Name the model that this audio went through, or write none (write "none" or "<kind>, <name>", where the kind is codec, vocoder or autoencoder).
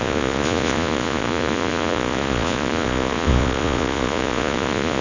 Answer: vocoder, Vocos